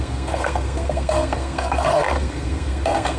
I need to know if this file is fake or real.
fake